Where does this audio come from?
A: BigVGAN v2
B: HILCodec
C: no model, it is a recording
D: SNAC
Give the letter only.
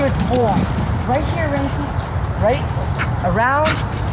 C